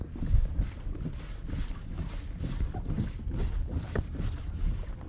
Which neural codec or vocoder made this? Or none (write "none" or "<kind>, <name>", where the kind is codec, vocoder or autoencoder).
none